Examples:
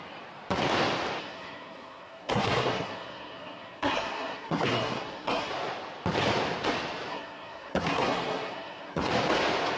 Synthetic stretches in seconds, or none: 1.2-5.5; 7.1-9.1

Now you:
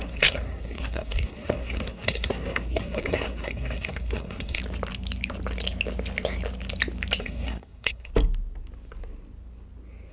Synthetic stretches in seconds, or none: 0.0-4.6; 7.2-8.1

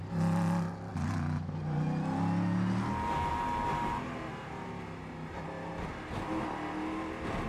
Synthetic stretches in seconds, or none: none

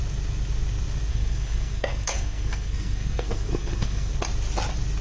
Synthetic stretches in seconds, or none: 1.1-4.1

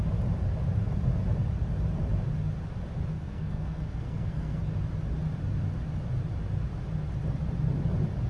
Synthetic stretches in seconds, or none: 3.1-4.6

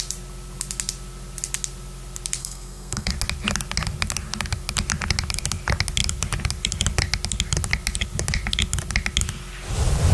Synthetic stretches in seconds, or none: 2.4-3.1

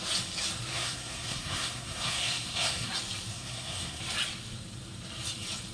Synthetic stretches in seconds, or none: 0.7-2.9; 3.3-4.0